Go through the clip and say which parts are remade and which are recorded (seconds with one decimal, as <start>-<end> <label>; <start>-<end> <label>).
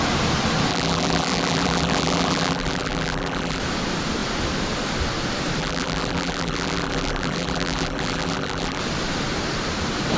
0.0-0.7 recorded; 0.7-3.6 remade; 3.6-5.6 recorded; 5.6-8.8 remade; 8.8-10.2 recorded